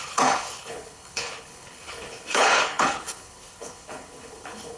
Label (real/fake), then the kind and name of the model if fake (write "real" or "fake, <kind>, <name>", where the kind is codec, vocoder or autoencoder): fake, codec, HILCodec